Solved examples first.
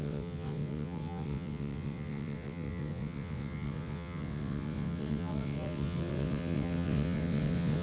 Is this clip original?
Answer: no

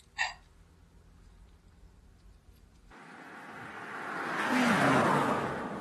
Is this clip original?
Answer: yes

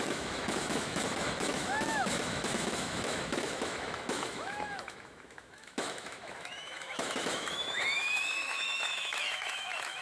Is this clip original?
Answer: no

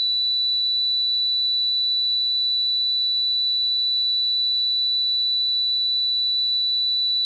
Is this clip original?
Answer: yes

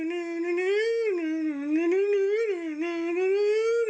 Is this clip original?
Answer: yes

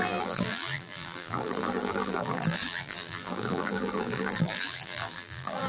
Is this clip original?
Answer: no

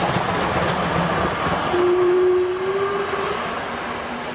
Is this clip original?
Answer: yes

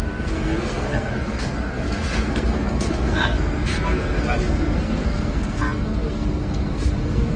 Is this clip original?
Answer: no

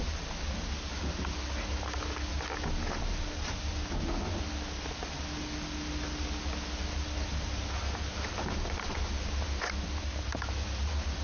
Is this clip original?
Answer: yes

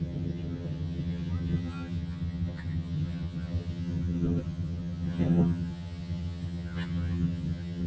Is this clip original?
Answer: no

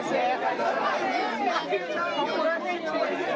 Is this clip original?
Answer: yes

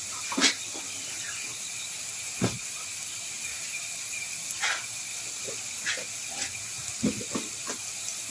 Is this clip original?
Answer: yes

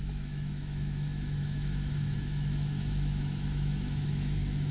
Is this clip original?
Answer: no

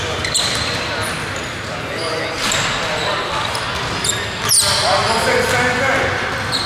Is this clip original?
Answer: yes